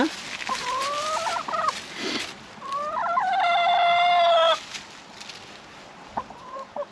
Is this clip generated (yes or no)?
no